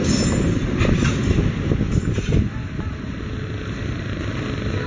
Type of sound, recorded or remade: recorded